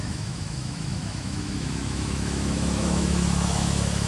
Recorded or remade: remade